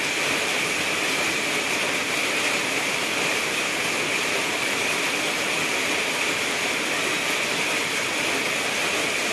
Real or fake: real